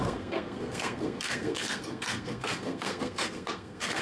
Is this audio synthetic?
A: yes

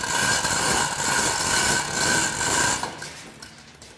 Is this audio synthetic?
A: no